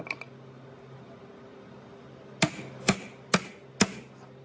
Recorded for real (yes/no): yes